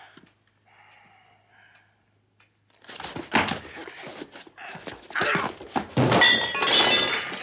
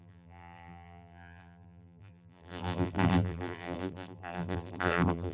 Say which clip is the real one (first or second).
first